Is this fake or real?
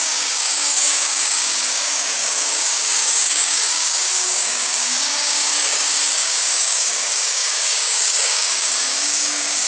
fake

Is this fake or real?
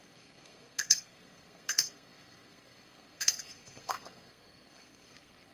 fake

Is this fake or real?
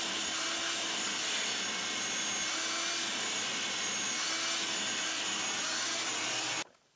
real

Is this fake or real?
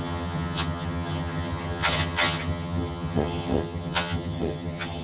fake